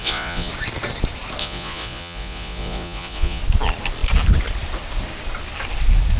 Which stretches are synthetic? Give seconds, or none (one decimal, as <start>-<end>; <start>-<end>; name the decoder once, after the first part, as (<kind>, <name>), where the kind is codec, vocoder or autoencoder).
0.0-0.5 (vocoder, Vocos); 1.4-3.4

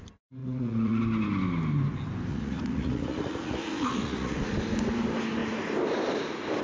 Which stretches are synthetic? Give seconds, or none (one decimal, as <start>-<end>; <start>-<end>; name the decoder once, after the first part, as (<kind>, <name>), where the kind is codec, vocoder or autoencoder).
0.4-1.0 (vocoder, Vocos); 2.3-4.4

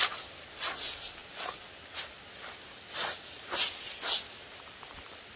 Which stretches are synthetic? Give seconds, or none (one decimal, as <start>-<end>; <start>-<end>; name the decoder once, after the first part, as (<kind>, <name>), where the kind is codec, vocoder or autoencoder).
none